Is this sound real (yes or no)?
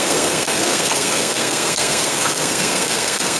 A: no